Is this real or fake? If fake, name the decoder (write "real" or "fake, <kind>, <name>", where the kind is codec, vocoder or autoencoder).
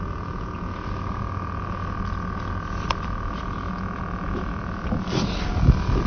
real